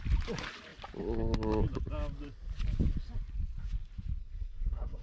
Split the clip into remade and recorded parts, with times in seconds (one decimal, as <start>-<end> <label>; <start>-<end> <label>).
0.0-4.2 recorded; 4.2-5.0 remade